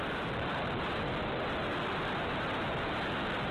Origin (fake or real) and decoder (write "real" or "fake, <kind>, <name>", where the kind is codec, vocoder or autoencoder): real